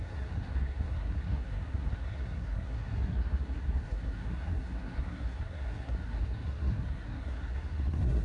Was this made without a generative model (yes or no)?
no